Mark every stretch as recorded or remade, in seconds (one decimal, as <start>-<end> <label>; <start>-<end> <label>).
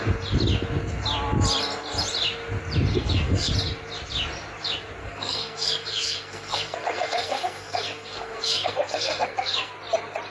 0.0-2.9 recorded; 2.9-3.5 remade; 3.5-5.0 recorded; 5.0-9.7 remade; 9.7-10.3 recorded